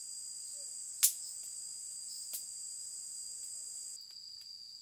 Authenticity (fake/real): real